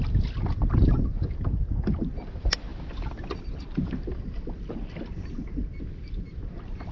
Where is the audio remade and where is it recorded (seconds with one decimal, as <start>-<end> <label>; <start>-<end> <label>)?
0.0-6.9 recorded